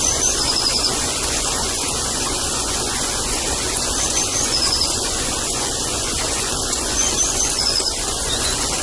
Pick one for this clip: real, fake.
fake